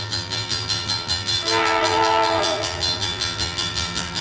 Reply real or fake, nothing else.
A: fake